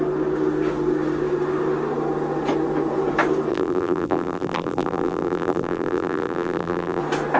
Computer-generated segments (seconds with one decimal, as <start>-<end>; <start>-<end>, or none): 3.5-7.0